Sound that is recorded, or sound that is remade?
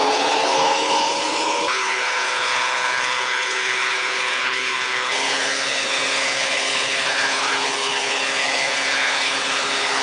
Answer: remade